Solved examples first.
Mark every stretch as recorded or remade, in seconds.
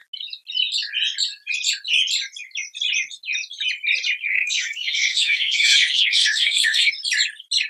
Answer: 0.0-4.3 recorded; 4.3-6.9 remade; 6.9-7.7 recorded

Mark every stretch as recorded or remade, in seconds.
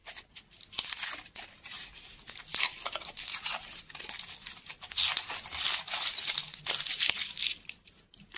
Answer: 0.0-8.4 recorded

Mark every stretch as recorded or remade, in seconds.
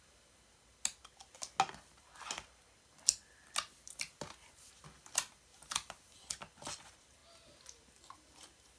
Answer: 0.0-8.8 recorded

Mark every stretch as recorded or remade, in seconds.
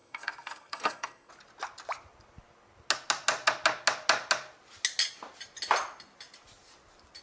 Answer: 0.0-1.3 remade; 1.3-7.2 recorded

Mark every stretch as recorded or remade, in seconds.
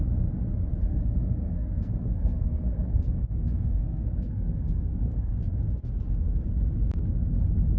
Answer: 0.0-0.9 recorded; 0.9-5.6 remade; 5.6-7.8 recorded